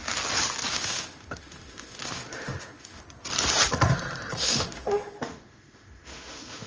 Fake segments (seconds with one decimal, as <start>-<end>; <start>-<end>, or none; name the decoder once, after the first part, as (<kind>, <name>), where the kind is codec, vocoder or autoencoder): 0.7-3.0 (autoencoder, DAC-VAE); 4.4-6.7